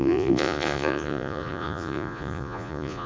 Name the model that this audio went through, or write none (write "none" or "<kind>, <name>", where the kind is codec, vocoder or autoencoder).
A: vocoder, Vocos